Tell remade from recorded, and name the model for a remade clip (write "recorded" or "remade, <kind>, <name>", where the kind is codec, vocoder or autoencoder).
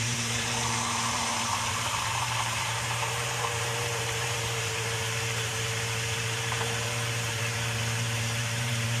remade, vocoder, BigVGAN v2